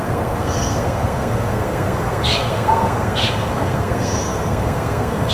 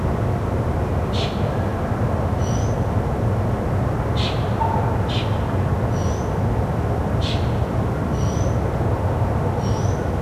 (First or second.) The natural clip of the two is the second